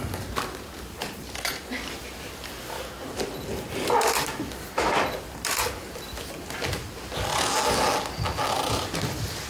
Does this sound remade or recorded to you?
recorded